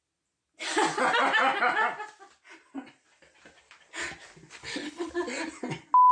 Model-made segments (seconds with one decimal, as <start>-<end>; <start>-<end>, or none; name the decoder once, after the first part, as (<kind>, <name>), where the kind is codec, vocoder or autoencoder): 4.6-5.1 (codec, HILCodec)